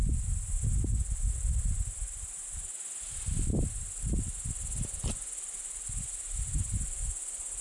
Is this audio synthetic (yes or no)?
no